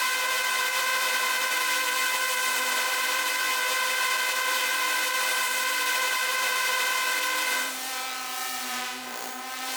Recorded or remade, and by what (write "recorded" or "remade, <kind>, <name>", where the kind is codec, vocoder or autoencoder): remade, vocoder, BigVGAN v2